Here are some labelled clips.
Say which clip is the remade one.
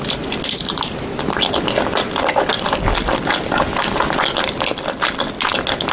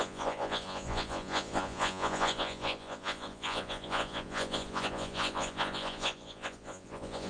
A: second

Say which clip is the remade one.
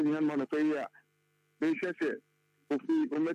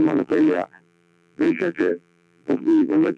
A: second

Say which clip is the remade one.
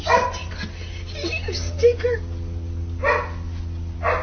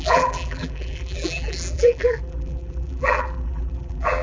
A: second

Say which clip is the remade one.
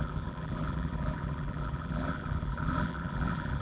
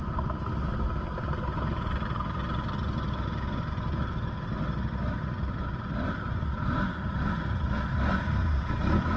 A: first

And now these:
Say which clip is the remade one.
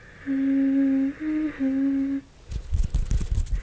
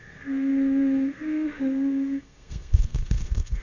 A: second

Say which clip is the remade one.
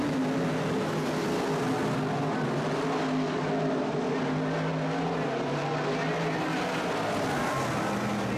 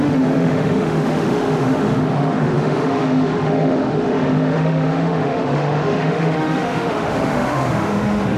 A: second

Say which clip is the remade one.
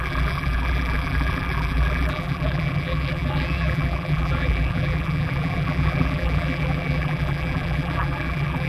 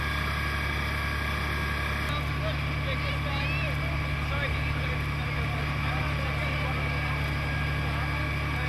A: first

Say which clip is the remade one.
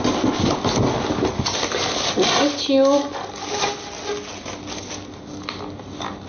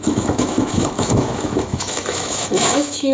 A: second